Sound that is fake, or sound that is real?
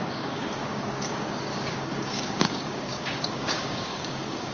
fake